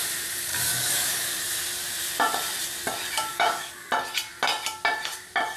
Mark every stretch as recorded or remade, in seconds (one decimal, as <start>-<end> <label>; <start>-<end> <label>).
0.0-0.5 recorded; 0.5-1.4 remade; 1.4-3.3 recorded; 3.3-3.9 remade; 3.9-5.6 recorded